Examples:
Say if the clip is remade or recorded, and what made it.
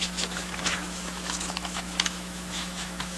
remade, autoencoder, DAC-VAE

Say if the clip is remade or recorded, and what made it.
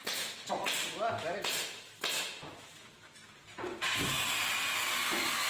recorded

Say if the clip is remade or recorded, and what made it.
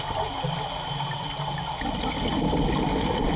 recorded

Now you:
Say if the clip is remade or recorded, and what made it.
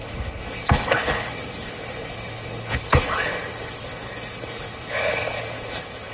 remade, codec, HILCodec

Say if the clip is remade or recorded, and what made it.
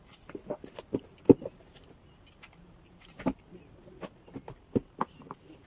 recorded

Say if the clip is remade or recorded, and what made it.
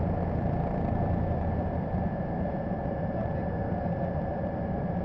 remade, vocoder, BigVGAN v2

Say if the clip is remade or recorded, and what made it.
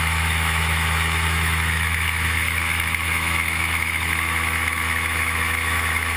remade, autoencoder, DAC-VAE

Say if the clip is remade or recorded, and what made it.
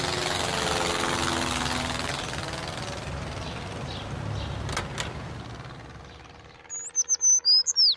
recorded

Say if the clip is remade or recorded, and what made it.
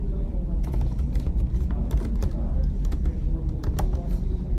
recorded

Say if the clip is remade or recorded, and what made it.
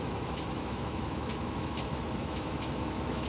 remade, autoencoder, DAC-VAE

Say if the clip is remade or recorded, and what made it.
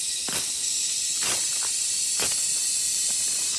recorded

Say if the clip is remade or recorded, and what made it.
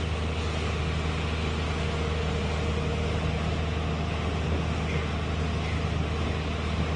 recorded